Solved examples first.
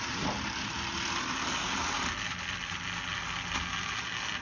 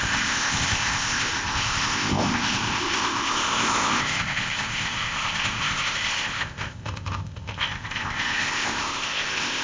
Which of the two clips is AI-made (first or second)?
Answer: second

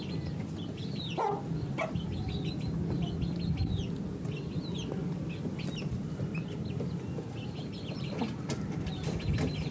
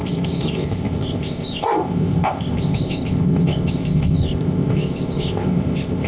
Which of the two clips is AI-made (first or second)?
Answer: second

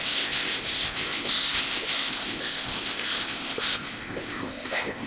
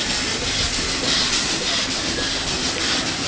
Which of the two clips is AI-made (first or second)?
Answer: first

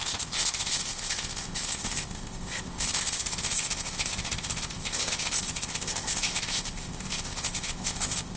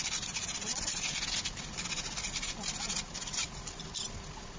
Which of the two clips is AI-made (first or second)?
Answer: first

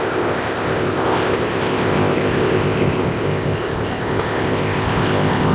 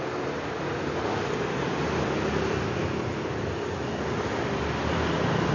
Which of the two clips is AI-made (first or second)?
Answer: first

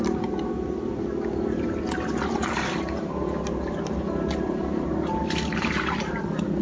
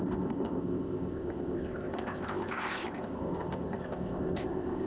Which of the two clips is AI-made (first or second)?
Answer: second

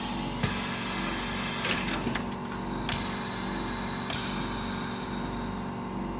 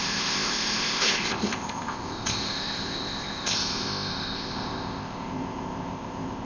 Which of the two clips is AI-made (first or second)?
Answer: second